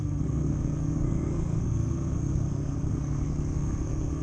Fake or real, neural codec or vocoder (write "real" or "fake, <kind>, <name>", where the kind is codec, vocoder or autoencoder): fake, codec, SNAC